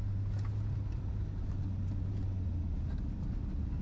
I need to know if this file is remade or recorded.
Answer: recorded